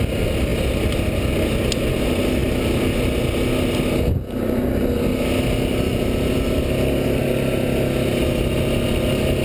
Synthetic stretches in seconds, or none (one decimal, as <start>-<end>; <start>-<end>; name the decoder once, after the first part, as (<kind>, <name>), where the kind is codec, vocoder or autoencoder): none